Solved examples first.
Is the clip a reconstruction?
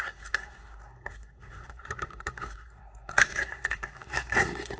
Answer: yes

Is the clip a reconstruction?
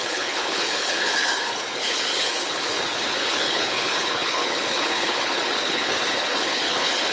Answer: yes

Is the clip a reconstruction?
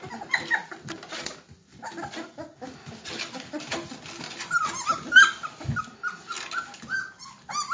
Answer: no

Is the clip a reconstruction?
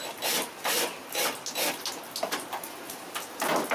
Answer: no